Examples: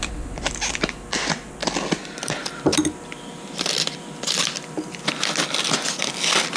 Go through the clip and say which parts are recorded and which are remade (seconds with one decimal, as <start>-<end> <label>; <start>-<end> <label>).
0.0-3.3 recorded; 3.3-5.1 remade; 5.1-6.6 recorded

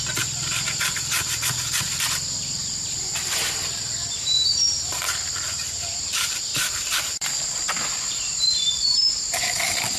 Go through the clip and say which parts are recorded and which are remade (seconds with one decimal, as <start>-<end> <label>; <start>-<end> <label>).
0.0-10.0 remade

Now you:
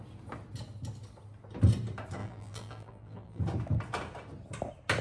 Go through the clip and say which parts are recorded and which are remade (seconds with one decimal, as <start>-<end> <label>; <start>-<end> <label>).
0.0-2.2 recorded; 2.2-3.4 remade; 3.4-5.0 recorded